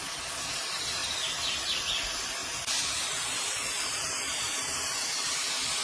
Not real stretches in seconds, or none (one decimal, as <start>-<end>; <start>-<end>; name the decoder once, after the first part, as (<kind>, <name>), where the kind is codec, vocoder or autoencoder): none